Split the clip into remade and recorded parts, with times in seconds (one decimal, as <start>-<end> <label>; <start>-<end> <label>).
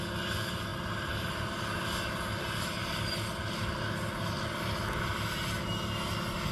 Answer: 0.0-6.5 recorded